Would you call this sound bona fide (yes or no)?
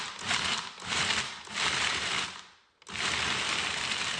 yes